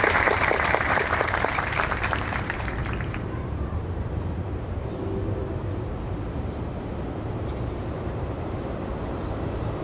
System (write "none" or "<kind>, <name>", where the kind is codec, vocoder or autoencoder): vocoder, BigVGAN v2